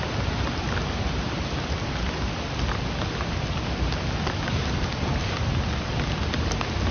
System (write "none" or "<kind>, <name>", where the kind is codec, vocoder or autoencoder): none